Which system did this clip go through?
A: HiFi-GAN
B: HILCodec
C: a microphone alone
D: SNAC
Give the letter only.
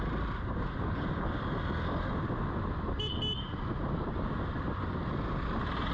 C